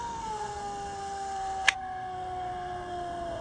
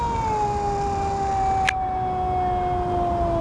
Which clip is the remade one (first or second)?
first